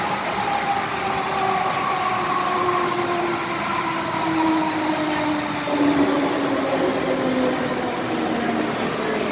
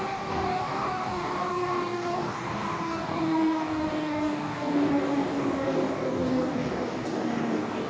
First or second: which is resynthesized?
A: second